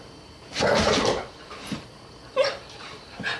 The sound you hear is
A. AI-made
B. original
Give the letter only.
A